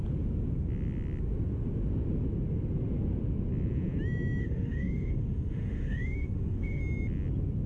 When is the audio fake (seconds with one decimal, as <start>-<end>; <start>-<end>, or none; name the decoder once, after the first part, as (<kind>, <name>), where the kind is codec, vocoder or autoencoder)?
4.4-6.8 (autoencoder, DAC-VAE)

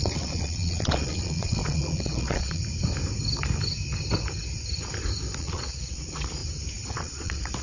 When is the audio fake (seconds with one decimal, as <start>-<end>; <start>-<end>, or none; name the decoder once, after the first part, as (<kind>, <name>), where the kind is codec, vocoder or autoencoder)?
0.0-2.6 (vocoder, Vocos); 5.4-6.4; 6.9-7.6

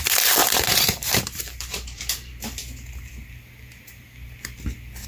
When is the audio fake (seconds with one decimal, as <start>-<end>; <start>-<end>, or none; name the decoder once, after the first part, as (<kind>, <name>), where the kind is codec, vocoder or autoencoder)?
0.4-2.3 (vocoder, BigVGAN v2)